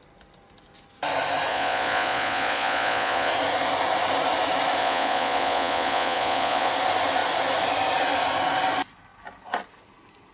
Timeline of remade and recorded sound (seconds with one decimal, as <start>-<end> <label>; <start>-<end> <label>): 0.0-1.5 recorded; 1.5-3.3 remade; 3.3-4.8 recorded; 4.8-6.7 remade; 6.7-10.3 recorded